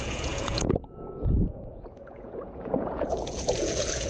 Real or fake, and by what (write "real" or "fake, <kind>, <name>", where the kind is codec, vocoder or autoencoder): fake, vocoder, Vocos